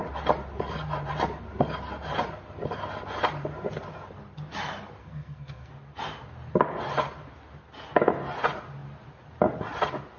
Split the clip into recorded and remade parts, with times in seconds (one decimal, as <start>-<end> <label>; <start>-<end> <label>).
0.0-5.0 recorded; 5.0-5.7 remade; 5.7-10.2 recorded